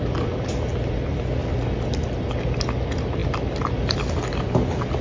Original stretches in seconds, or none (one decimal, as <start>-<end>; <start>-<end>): 0.0-5.0